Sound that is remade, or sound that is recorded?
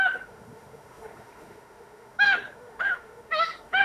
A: remade